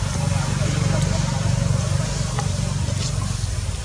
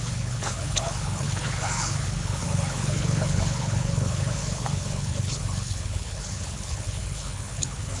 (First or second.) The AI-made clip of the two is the second